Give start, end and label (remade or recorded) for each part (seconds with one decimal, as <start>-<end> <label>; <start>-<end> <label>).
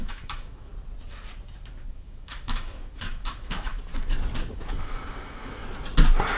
0.0-0.7 remade; 0.7-1.9 recorded; 1.9-3.9 remade; 3.9-4.5 recorded; 4.5-5.6 remade; 5.6-6.4 recorded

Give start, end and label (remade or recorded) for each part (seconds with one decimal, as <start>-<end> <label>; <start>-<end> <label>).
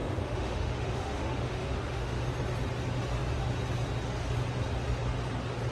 0.0-2.2 remade; 2.2-5.7 recorded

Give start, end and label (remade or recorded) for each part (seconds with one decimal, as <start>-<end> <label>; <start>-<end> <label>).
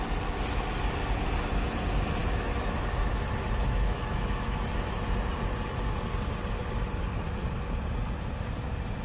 0.0-2.2 recorded; 2.2-5.0 remade; 5.0-9.0 recorded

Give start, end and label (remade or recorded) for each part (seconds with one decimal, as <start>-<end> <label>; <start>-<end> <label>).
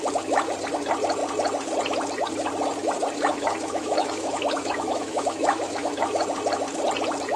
0.0-3.3 recorded; 3.3-6.2 remade; 6.2-7.4 recorded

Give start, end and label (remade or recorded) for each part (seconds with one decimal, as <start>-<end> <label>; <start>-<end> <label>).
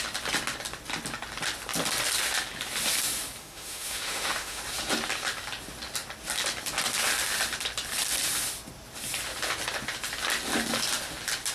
0.0-3.4 recorded; 3.4-4.6 remade; 4.6-11.5 recorded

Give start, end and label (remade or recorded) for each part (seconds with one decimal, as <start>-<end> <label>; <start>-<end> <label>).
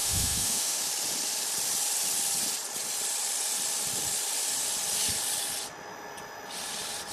0.0-0.8 remade; 0.8-7.1 recorded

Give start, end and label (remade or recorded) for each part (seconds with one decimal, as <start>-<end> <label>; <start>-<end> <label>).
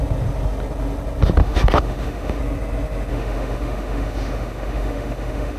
0.0-1.4 recorded; 1.4-2.4 remade; 2.4-3.1 recorded; 3.1-5.6 remade